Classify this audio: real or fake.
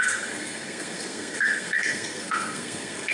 fake